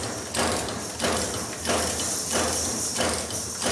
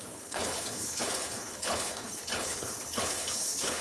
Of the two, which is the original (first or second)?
first